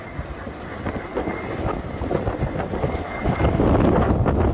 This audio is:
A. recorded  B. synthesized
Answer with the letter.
A